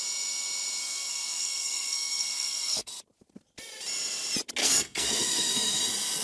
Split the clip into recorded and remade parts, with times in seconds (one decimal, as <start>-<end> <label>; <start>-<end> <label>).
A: 0.0-0.8 recorded; 0.8-2.9 remade; 2.9-4.6 recorded; 4.6-5.8 remade; 5.8-6.2 recorded